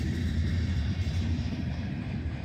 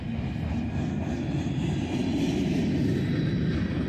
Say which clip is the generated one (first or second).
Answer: first